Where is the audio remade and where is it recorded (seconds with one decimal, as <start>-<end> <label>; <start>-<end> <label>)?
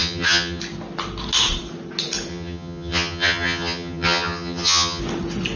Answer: 0.0-0.6 remade; 0.6-2.3 recorded; 2.3-5.0 remade; 5.0-5.6 recorded